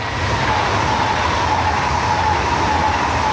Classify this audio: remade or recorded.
recorded